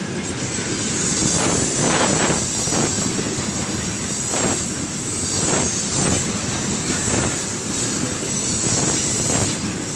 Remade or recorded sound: recorded